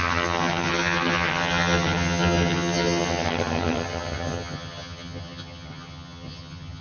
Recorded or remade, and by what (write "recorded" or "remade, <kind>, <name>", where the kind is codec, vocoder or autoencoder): remade, vocoder, HiFi-GAN